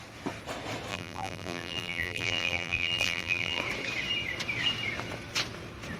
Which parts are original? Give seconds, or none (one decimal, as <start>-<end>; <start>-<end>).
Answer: 0.0-0.9; 3.6-6.0